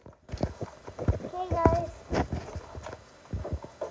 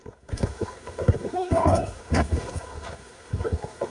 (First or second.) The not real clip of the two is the second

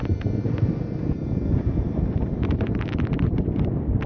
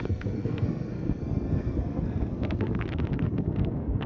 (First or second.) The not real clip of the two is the second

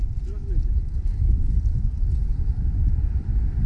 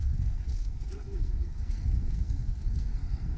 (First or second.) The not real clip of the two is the second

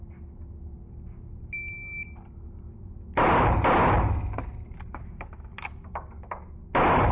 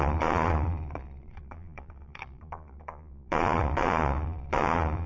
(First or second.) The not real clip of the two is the second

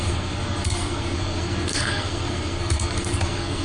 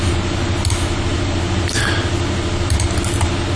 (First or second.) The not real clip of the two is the first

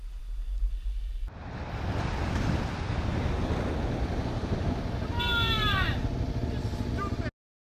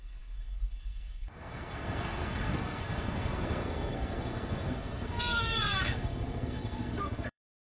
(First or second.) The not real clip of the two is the second